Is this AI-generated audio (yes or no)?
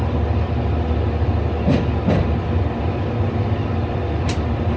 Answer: no